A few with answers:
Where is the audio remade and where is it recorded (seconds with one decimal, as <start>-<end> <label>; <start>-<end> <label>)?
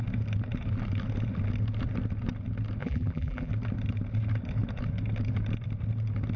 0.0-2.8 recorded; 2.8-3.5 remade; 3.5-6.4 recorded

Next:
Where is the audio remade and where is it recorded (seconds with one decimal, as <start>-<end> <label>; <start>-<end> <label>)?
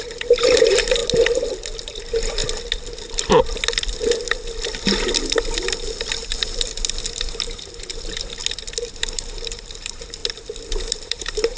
0.0-1.0 remade; 1.0-1.8 recorded; 1.8-2.4 remade; 2.4-7.2 recorded; 7.2-8.4 remade; 8.4-8.9 recorded; 8.9-10.2 remade; 10.2-10.9 recorded; 10.9-11.6 remade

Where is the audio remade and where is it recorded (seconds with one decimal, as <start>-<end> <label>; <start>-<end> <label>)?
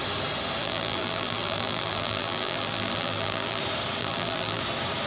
0.0-0.6 recorded; 0.6-3.6 remade; 3.6-4.0 recorded; 4.0-4.6 remade; 4.6-5.1 recorded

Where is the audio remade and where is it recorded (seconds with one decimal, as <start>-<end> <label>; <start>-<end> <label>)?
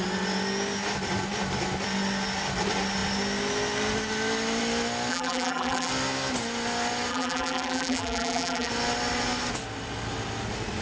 0.0-5.1 recorded; 5.1-5.9 remade; 5.9-7.1 recorded; 7.1-8.7 remade; 8.7-10.8 recorded